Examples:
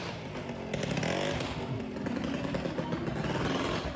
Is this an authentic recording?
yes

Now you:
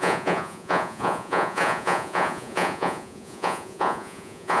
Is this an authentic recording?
no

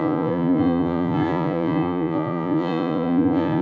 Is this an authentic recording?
no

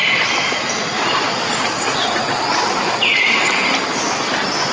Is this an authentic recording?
yes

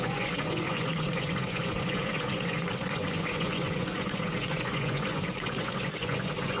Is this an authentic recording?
no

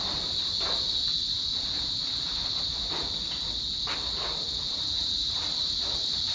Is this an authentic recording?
yes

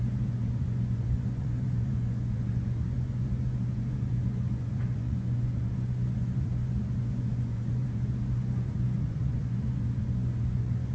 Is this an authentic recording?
no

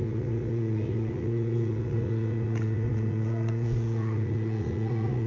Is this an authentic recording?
no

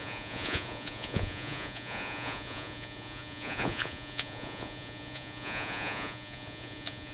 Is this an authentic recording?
no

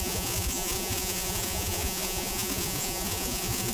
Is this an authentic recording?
no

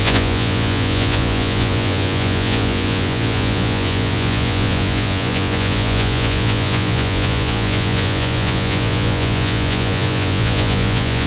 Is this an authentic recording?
no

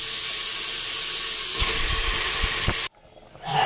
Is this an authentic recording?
yes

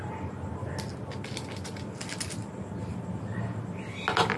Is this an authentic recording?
yes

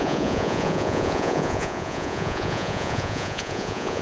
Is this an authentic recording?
no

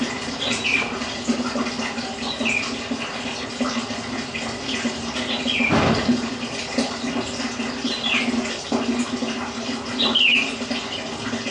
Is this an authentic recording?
yes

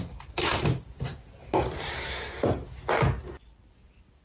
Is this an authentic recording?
yes